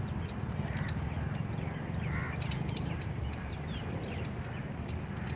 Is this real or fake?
real